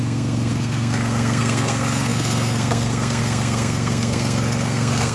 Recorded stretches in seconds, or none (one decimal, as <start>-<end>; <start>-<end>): none